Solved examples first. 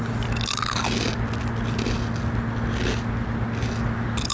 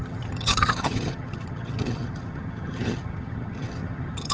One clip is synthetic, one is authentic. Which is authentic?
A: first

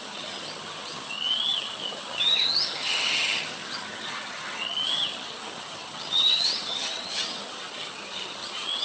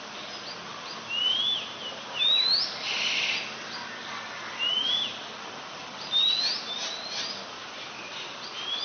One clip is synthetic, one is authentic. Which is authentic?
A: second